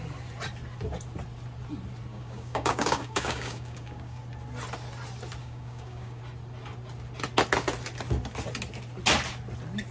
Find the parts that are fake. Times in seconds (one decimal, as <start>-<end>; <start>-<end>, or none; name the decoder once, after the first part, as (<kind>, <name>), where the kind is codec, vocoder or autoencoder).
2.1-4.2 (codec, DAC); 5.4-6.2